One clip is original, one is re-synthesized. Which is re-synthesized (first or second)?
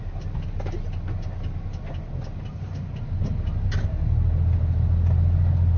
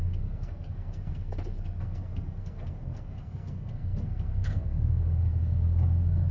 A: second